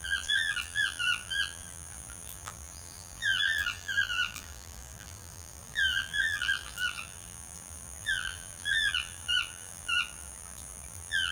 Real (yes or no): no